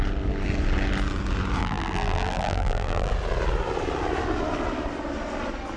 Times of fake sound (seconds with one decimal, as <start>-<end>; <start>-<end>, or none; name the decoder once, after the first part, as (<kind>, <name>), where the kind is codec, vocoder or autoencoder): 1.6-3.1 (vocoder, BigVGAN v2)